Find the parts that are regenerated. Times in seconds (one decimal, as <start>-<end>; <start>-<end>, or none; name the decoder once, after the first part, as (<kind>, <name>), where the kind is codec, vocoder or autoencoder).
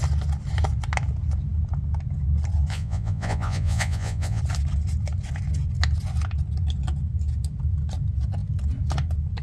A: 2.7-4.4 (vocoder, Vocos)